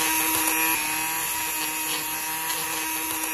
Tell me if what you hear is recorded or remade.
recorded